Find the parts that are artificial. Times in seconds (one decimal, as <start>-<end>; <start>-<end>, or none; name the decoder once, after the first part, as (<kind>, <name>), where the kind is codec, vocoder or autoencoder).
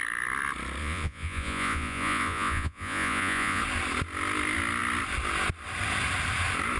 0.8-3.6 (vocoder, Vocos)